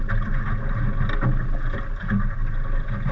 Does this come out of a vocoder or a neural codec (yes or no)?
no